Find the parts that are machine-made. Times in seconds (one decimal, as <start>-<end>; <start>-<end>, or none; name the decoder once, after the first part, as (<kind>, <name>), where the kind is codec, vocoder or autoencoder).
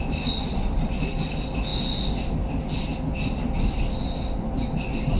none